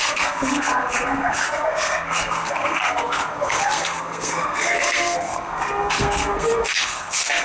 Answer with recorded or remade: remade